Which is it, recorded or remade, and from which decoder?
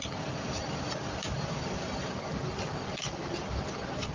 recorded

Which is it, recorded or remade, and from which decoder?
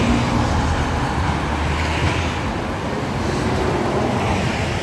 recorded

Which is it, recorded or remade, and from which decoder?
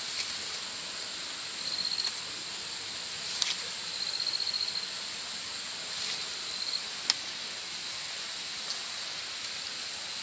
recorded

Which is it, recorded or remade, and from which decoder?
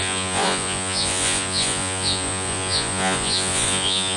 remade, vocoder, Vocos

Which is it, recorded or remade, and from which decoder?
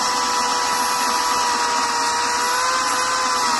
recorded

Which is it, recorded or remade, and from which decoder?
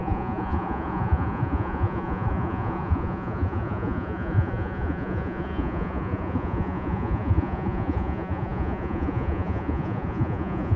remade, vocoder, Vocos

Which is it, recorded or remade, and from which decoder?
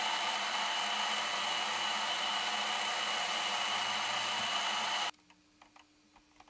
recorded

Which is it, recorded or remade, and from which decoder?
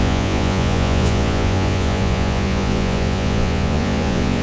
remade, vocoder, Vocos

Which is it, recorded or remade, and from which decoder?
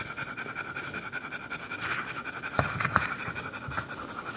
recorded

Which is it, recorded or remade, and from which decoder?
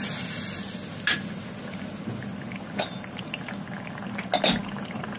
recorded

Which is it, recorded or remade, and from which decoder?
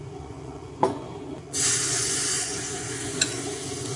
remade, vocoder, Vocos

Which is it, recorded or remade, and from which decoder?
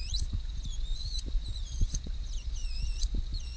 remade, vocoder, Vocos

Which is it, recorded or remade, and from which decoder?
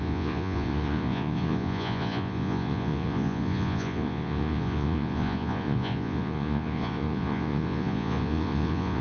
remade, vocoder, Vocos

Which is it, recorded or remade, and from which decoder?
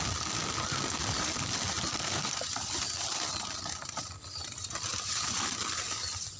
recorded